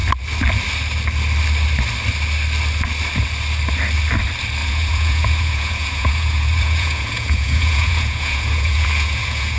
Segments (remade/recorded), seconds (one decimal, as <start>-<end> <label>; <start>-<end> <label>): 0.0-4.6 recorded; 4.6-9.6 remade